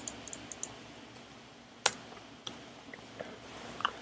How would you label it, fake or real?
real